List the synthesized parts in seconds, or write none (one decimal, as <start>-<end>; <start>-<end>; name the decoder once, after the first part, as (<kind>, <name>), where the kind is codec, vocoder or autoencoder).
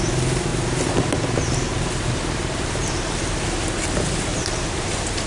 0.5-3.2 (vocoder, BigVGAN v2); 4.3-5.3